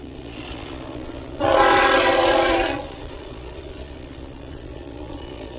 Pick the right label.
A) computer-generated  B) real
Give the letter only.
A